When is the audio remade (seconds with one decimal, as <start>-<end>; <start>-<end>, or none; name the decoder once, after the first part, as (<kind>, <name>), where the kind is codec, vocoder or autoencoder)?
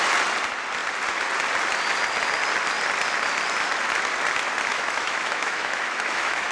4.7-6.5 (autoencoder, DAC-VAE)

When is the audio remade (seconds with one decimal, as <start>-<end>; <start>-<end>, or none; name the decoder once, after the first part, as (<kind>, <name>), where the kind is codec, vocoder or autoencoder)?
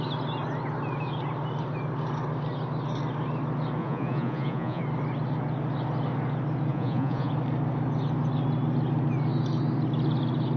3.8-4.8 (vocoder, Vocos); 6.7-7.3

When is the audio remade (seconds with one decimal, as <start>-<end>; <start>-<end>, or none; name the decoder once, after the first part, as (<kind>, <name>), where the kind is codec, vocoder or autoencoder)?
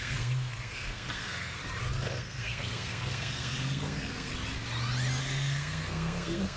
0.0-1.6 (codec, SNAC); 2.1-4.3; 5.2-6.6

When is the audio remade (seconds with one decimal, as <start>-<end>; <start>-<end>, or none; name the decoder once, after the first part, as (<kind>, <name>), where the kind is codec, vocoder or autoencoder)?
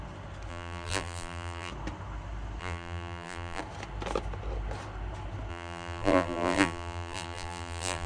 0.5-1.7 (vocoder, BigVGAN v2); 2.6-3.6; 5.5-8.1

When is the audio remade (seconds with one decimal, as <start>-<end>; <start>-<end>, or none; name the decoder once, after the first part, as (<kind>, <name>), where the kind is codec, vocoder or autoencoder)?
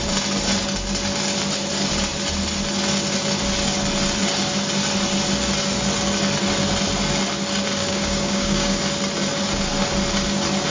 7.8-8.8 (codec, DAC)